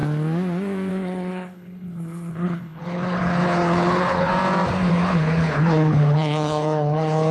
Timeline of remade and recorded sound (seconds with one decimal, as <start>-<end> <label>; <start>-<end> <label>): 0.0-0.9 recorded; 0.9-4.3 remade; 4.3-4.9 recorded; 4.9-7.3 remade